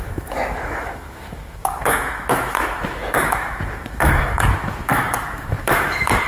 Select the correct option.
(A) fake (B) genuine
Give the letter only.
A